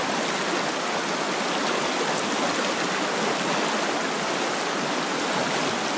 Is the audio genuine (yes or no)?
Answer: yes